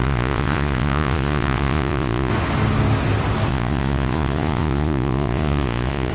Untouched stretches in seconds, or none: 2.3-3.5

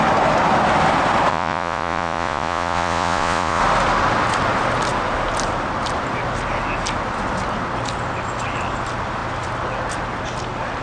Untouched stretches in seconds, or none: 0.0-1.3; 3.6-10.8

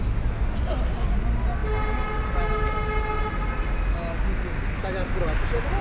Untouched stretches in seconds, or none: 0.0-5.8

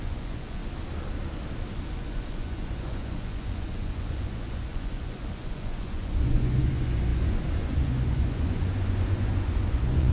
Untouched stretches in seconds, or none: 0.6-1.9

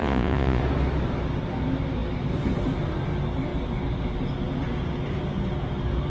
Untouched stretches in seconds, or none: 0.6-6.1

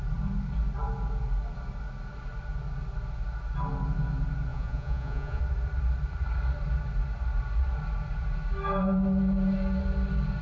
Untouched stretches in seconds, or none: 0.0-4.5; 5.4-10.4